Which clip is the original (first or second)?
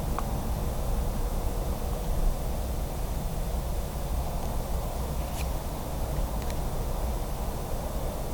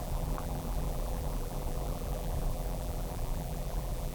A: first